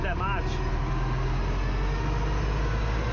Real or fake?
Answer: real